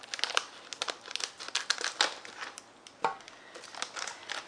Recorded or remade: recorded